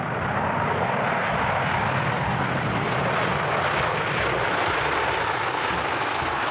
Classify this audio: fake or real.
real